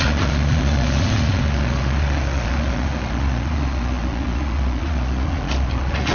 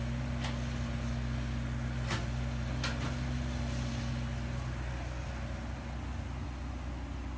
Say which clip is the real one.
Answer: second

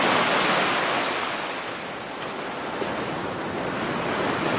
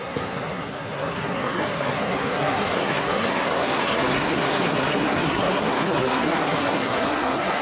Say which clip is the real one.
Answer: first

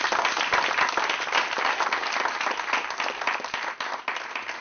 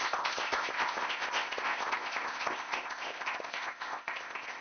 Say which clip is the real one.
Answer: first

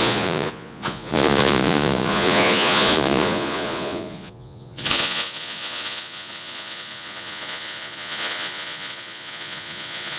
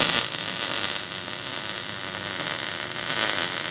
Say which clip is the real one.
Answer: second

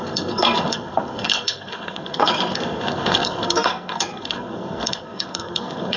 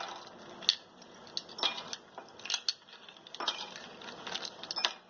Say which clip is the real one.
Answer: second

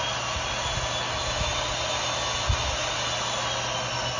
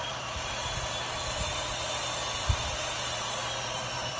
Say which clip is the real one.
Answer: first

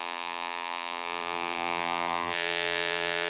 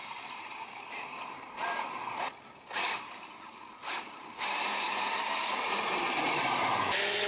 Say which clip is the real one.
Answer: second